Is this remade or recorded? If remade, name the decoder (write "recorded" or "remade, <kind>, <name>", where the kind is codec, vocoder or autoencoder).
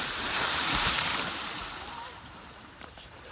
remade, vocoder, BigVGAN v2